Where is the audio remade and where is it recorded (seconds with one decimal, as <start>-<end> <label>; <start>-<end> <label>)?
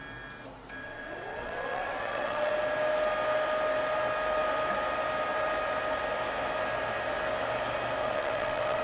0.0-0.8 recorded; 0.8-2.5 remade; 2.5-8.0 recorded; 8.0-8.8 remade